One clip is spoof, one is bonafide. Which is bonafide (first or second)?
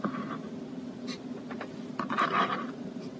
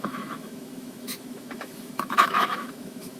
first